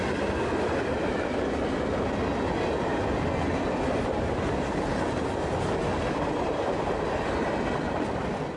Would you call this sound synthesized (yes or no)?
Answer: no